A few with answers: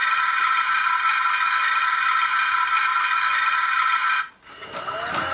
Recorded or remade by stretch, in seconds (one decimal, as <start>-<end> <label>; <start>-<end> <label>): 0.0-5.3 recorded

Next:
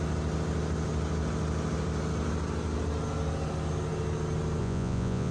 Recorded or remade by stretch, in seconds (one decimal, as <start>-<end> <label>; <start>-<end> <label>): 0.0-4.6 recorded; 4.6-5.3 remade

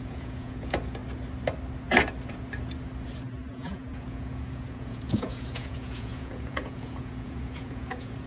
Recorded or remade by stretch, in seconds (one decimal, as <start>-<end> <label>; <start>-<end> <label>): 0.0-1.0 remade; 1.0-3.5 recorded; 3.5-8.3 remade

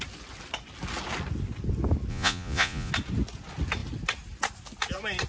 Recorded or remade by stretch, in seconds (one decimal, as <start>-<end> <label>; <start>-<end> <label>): 0.0-2.1 recorded; 2.1-2.9 remade; 2.9-5.3 recorded

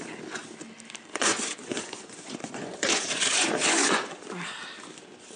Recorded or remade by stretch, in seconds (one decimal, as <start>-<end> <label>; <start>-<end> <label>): 0.0-1.1 recorded; 1.1-4.3 remade; 4.3-5.4 recorded

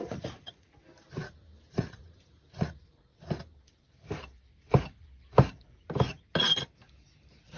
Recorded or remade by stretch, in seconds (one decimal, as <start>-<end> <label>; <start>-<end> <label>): 0.0-0.8 remade; 0.8-1.7 recorded; 1.7-3.1 remade; 3.1-7.6 recorded

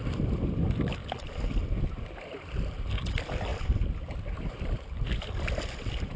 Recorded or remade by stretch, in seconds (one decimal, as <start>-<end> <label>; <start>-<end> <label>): 0.0-6.2 recorded

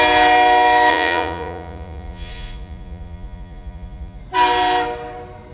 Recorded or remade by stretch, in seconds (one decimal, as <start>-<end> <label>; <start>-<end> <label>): 0.0-0.9 recorded; 0.9-4.2 remade; 4.2-5.5 recorded